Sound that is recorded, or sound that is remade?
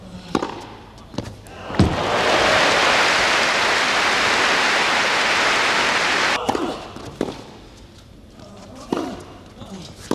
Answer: recorded